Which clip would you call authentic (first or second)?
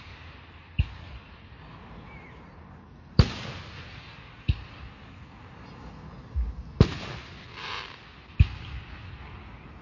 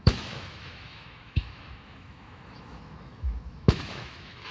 first